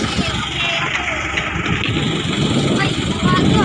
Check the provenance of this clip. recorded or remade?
recorded